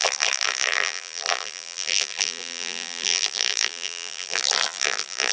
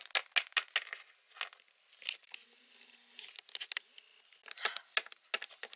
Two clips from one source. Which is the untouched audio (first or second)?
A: second